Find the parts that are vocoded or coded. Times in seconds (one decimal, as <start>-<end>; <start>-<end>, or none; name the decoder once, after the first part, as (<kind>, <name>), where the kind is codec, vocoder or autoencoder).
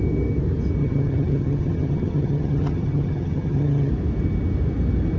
0.8-3.9 (vocoder, HiFi-GAN)